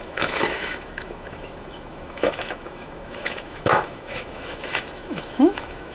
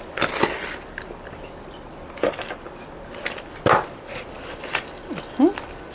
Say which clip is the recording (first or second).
second